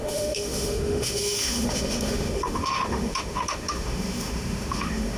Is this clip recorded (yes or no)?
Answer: no